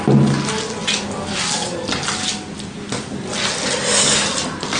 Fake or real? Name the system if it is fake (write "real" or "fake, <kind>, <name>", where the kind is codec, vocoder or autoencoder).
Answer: real